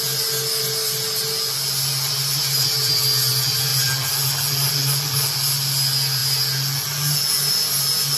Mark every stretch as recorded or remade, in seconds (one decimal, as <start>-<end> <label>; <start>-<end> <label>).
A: 0.0-8.2 recorded